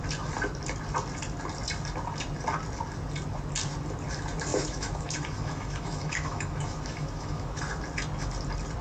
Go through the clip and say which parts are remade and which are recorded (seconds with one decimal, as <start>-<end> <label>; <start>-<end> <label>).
0.0-4.5 recorded; 4.5-7.6 remade; 7.6-8.8 recorded